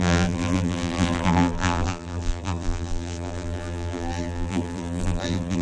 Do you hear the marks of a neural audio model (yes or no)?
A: yes